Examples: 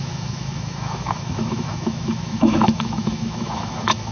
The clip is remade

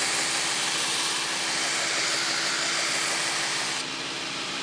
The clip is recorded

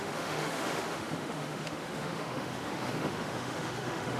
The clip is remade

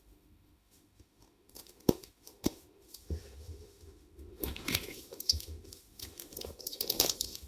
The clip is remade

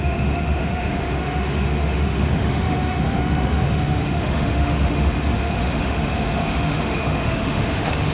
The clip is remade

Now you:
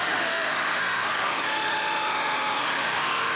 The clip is remade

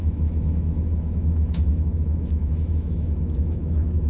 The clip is remade